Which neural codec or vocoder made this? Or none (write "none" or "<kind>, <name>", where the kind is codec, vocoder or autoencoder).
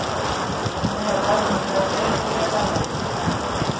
none